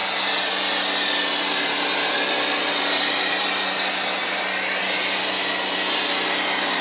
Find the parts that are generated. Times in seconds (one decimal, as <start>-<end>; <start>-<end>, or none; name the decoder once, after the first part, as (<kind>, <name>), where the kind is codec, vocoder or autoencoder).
none